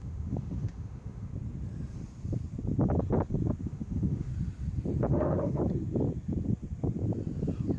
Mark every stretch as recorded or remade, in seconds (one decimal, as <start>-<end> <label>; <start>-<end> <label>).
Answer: 0.0-1.3 remade; 1.3-3.6 recorded; 3.6-4.3 remade; 4.3-5.1 recorded; 5.1-5.6 remade; 5.6-7.8 recorded